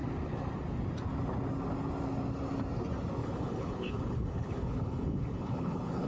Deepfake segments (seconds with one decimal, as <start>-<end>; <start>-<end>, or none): 3.2-6.1

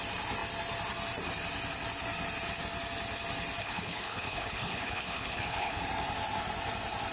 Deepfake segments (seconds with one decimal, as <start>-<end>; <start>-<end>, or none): 3.6-5.8

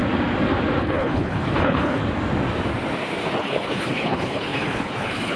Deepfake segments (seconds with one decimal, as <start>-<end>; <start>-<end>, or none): 0.8-2.0; 3.4-5.4

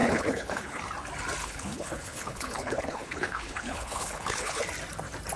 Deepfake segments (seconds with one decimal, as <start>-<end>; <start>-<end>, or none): 0.0-0.8; 1.4-4.6

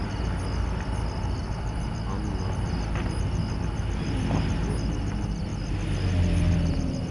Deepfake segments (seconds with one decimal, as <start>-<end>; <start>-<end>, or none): none

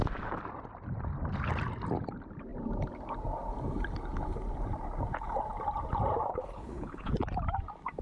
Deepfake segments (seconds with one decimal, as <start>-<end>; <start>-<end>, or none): 6.3-7.1

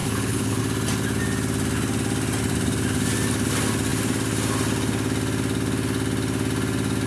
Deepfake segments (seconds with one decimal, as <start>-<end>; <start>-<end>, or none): 0.0-0.6

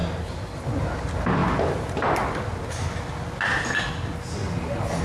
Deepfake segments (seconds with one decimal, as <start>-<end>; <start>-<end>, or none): none